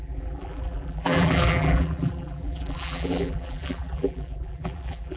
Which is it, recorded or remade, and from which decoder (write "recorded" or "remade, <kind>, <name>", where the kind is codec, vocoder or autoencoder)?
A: remade, vocoder, BigVGAN v2